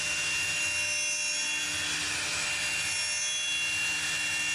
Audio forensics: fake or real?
real